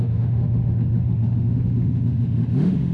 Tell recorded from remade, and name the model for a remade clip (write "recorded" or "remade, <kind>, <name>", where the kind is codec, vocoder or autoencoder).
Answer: remade, autoencoder, DAC-VAE